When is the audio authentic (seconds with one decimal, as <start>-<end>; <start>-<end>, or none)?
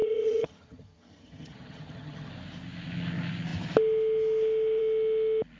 2.3-5.6